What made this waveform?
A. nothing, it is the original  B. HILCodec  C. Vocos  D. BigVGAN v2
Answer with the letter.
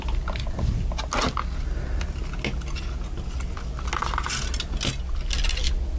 A